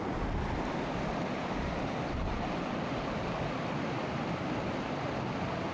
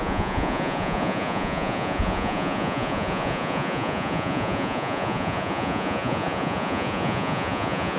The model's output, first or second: second